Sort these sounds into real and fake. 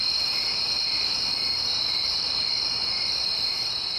fake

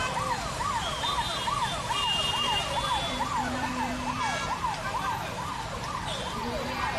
fake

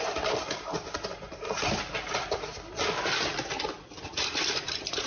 fake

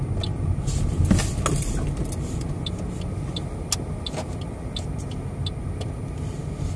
real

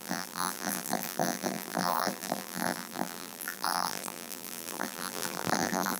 fake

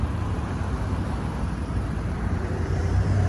fake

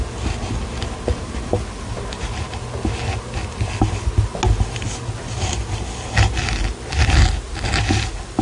real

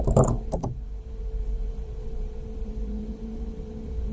fake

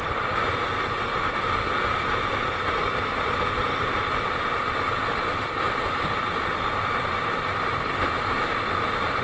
real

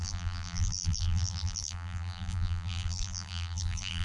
fake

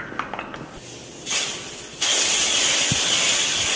real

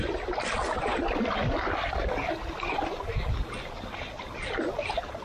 real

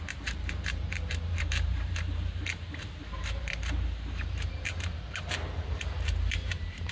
fake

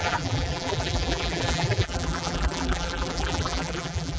fake